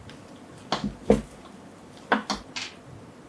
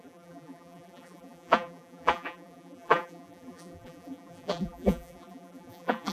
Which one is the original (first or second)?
first